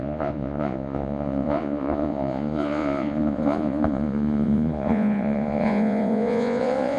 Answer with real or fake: fake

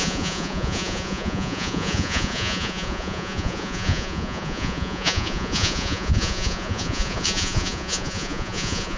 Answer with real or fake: fake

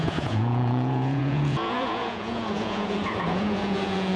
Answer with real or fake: fake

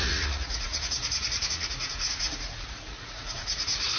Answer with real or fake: fake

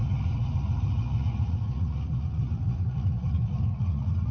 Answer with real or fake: fake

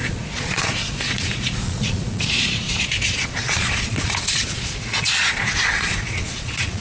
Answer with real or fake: fake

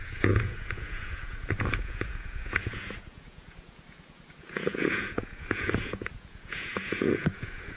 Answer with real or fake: fake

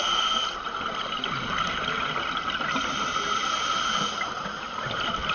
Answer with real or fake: real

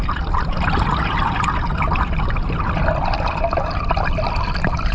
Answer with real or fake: real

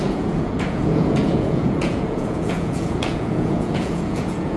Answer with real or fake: fake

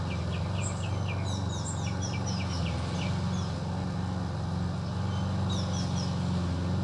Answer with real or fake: real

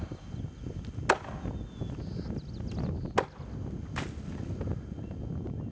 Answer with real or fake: real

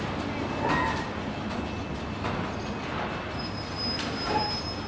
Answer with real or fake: real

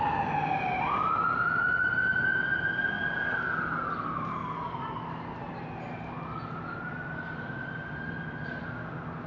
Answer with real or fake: real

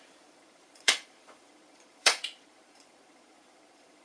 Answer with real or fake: fake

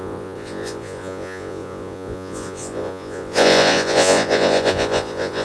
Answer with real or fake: fake